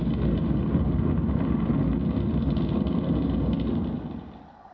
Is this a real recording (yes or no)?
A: yes